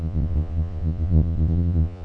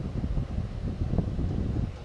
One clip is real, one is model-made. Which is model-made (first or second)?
first